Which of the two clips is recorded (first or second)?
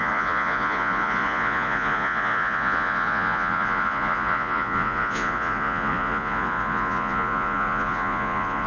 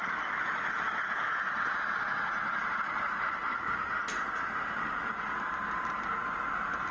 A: second